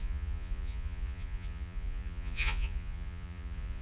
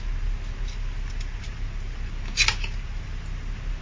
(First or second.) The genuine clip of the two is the second